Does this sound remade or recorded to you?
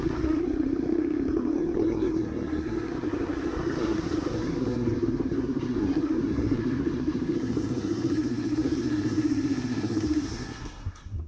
remade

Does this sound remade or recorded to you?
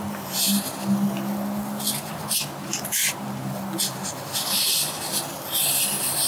recorded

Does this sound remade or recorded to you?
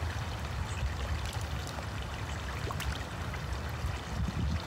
recorded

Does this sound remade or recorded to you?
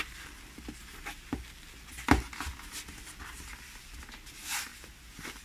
recorded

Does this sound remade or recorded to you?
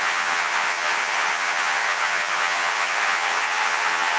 remade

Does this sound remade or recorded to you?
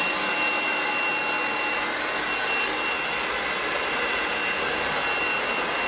recorded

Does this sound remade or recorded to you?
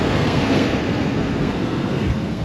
remade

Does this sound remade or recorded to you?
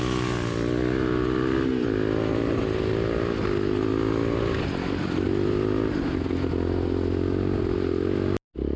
recorded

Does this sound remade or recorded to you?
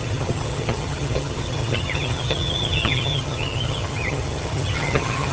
remade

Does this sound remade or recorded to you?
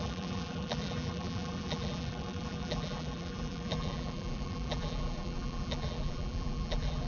remade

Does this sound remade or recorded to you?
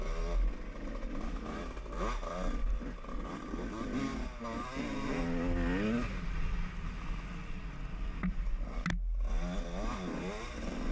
recorded